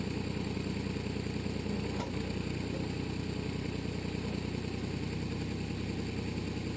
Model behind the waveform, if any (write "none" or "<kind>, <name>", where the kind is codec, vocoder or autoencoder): none